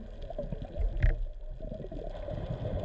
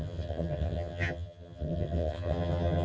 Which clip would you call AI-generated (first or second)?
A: second